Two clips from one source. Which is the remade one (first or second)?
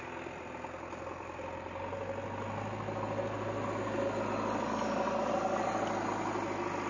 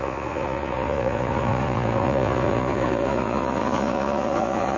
second